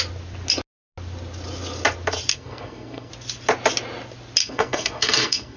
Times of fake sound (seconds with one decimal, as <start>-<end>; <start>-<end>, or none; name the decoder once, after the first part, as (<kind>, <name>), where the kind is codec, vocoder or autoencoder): 2.3-3.1 (codec, SNAC); 4.4-5.6